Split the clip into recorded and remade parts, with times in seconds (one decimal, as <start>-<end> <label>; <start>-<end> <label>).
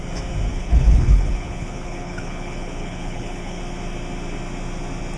0.0-0.5 recorded; 0.5-3.6 remade; 3.6-5.2 recorded